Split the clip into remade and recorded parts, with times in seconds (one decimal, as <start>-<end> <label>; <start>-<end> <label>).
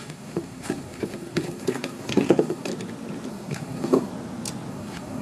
0.0-2.7 remade; 2.7-3.3 recorded; 3.3-4.1 remade; 4.1-4.7 recorded; 4.7-5.2 remade